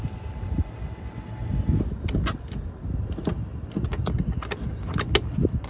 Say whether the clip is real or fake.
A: real